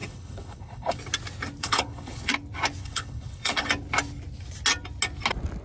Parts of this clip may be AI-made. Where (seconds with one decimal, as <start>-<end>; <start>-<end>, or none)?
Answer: 0.0-1.0; 1.6-2.3; 2.8-3.7